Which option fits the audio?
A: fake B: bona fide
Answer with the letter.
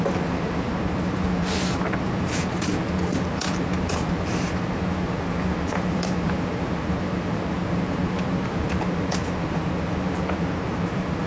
A